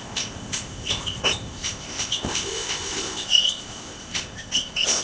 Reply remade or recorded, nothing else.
remade